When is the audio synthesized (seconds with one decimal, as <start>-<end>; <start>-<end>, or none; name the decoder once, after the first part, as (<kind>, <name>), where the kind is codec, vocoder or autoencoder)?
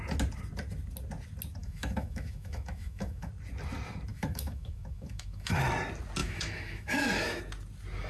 1.6-3.3 (autoencoder, DAC-VAE); 4.1-5.7; 6.2-7.4